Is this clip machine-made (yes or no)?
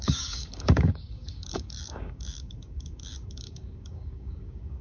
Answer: yes